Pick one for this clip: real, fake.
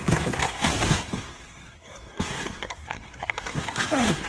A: fake